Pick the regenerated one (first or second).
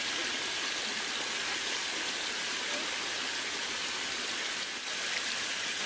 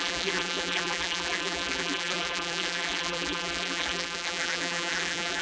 second